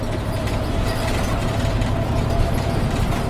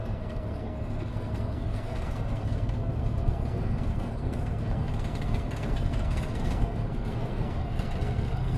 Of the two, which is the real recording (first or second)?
first